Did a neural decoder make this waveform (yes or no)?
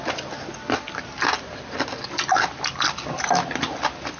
no